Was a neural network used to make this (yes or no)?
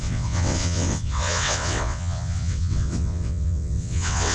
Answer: yes